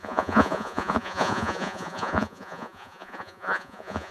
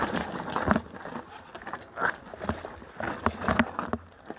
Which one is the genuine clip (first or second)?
second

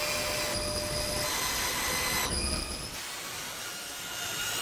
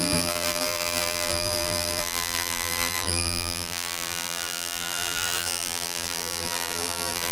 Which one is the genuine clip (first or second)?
first